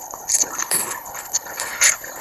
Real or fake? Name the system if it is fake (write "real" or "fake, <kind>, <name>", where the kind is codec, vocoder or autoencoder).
fake, codec, HILCodec